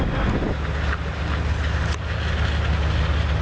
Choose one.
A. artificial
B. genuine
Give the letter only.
B